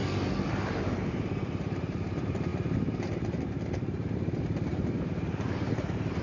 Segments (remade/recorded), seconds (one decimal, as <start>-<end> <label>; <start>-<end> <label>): 0.0-1.0 recorded; 1.0-6.2 remade